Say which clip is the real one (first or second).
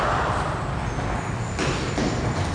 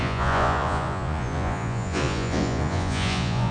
first